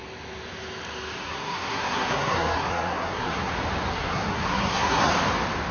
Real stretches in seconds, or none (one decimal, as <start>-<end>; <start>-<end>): 0.0-1.2; 3.5-3.9; 5.1-5.7